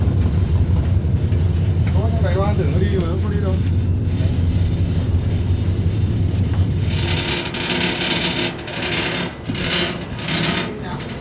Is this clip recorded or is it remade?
recorded